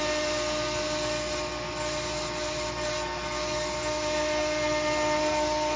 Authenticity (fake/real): real